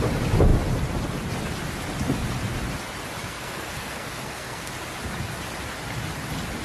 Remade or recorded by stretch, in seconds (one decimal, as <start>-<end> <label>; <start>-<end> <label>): 0.0-3.2 recorded; 3.2-4.7 remade; 4.7-6.6 recorded